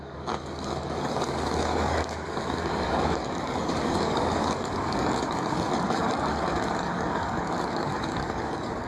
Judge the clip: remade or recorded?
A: remade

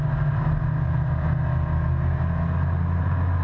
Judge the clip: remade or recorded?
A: recorded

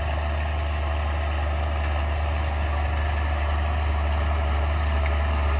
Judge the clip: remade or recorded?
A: recorded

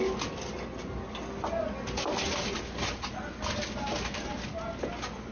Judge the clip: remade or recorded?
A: recorded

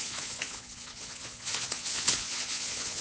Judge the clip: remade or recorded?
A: remade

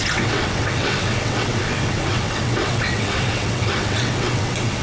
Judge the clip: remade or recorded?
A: remade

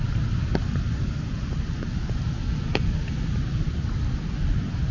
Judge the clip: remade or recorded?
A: recorded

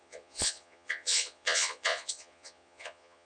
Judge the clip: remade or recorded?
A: remade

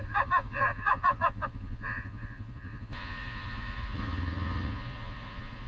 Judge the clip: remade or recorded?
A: remade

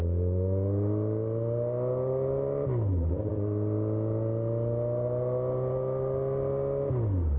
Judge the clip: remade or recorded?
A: recorded